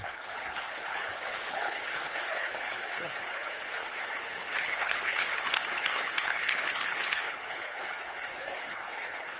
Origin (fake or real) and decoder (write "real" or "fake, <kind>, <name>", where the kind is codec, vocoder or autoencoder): fake, codec, HILCodec